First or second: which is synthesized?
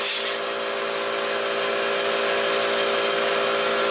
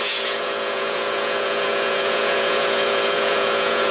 second